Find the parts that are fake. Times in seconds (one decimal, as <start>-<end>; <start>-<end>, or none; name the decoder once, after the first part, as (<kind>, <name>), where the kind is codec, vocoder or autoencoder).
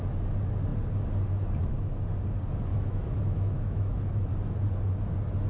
2.7-4.3 (autoencoder, DAC-VAE)